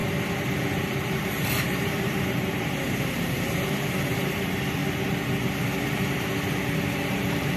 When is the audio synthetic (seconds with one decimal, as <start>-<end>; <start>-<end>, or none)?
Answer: 0.7-4.8; 6.9-7.6